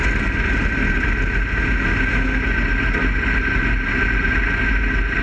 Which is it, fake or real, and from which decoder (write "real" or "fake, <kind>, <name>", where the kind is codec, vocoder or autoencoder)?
real